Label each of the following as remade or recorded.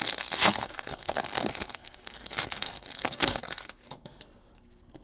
remade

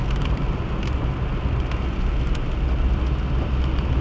recorded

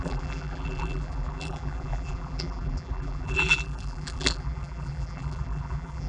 remade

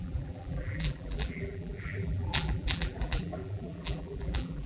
remade